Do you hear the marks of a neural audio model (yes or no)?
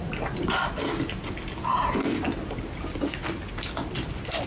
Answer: no